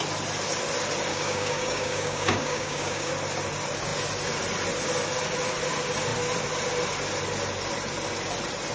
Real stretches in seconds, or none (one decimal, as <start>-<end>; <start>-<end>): 0.0-1.1; 3.1-8.7